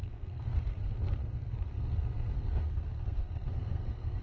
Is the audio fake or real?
fake